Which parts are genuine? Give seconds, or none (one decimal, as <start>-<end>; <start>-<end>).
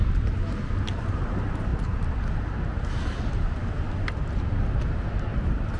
0.0-5.8